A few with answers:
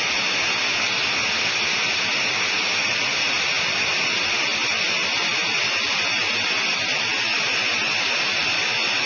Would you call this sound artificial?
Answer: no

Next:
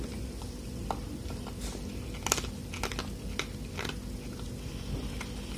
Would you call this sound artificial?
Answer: no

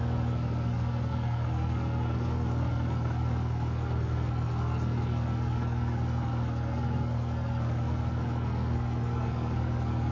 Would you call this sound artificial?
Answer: yes